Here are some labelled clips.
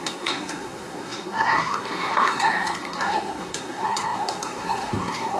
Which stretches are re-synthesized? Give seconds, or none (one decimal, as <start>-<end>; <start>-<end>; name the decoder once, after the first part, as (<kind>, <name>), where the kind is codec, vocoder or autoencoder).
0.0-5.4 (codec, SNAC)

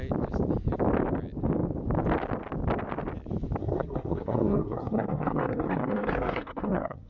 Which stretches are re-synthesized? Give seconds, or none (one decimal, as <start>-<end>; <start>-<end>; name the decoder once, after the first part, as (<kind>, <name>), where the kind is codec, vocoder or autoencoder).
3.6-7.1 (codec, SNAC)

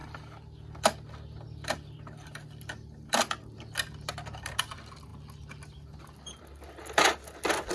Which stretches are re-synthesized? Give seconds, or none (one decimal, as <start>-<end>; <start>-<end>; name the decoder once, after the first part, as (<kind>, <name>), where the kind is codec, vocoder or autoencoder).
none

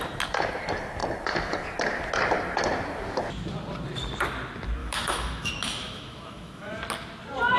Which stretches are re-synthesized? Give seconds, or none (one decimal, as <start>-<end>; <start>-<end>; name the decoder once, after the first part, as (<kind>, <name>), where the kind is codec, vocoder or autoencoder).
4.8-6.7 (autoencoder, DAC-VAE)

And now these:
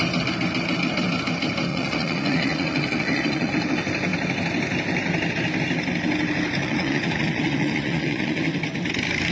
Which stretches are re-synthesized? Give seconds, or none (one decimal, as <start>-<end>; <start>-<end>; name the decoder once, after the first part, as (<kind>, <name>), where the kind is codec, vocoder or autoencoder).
1.7-3.5 (vocoder, Vocos); 6.6-8.5

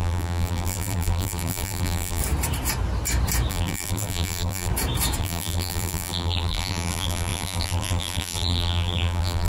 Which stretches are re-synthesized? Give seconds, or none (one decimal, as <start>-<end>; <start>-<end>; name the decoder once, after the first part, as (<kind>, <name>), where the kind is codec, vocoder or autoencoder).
0.0-2.2 (vocoder, BigVGAN v2); 3.5-4.7; 5.2-9.5

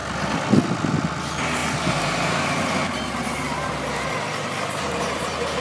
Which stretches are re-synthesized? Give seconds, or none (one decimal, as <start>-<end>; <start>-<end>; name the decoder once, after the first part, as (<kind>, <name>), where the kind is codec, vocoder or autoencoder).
0.9-1.6 (vocoder, BigVGAN v2); 5.0-5.6